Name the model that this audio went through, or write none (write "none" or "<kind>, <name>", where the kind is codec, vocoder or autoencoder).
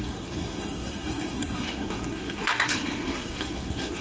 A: codec, SNAC